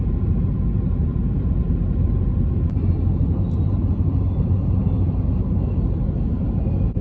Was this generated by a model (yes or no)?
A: yes